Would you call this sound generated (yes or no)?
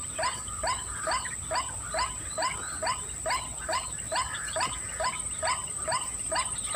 no